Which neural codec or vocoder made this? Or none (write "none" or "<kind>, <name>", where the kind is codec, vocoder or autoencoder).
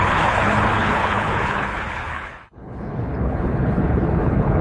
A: codec, HILCodec